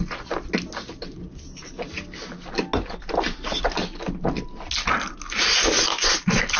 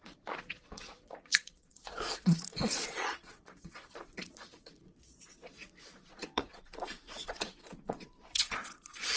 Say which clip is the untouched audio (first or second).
first